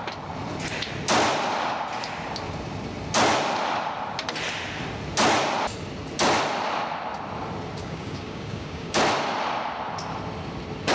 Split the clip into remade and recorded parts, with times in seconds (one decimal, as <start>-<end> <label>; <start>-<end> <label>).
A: 0.0-7.8 recorded; 7.8-9.0 remade; 9.0-10.9 recorded